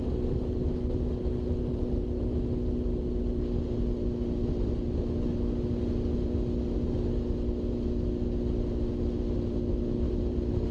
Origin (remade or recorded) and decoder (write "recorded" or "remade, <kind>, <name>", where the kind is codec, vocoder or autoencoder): recorded